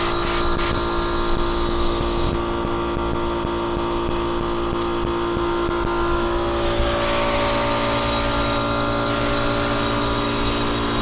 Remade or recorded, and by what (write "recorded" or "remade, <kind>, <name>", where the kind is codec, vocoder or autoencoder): recorded